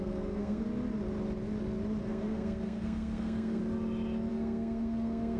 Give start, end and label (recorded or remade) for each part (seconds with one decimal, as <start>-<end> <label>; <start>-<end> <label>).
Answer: 0.0-0.6 remade; 0.6-2.0 recorded; 2.0-3.6 remade; 3.6-4.3 recorded; 4.3-5.4 remade